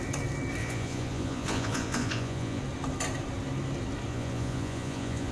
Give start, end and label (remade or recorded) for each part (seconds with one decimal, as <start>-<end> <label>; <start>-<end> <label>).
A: 0.0-0.6 recorded; 0.6-2.6 remade; 2.6-4.1 recorded; 4.1-5.3 remade